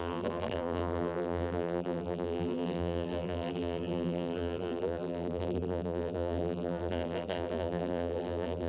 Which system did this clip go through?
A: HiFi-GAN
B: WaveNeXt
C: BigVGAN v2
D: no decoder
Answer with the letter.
C